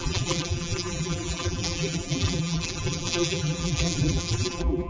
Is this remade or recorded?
remade